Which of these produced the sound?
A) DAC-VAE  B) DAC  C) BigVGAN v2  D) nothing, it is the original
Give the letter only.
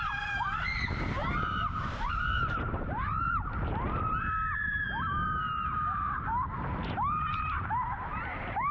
C